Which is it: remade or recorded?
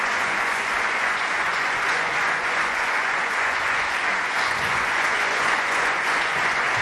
remade